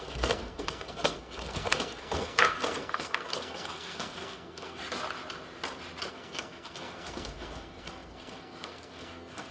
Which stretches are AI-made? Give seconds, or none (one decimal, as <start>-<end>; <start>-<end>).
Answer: 0.0-4.8; 6.1-9.5